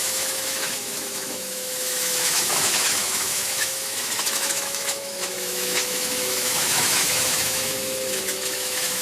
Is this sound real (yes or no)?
no